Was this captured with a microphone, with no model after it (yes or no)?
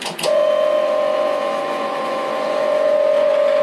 no